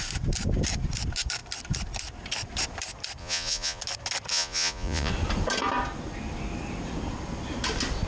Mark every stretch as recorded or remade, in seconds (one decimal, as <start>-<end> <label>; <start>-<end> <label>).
0.0-3.2 recorded; 3.2-3.8 remade; 3.8-4.3 recorded; 4.3-5.1 remade; 5.1-8.1 recorded